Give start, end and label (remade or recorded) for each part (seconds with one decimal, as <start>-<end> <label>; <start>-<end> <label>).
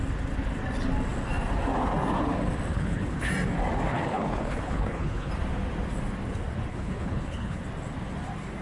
0.0-2.7 recorded; 2.7-3.3 remade; 3.3-3.9 recorded; 3.9-5.3 remade; 5.3-6.7 recorded; 6.7-7.6 remade; 7.6-8.6 recorded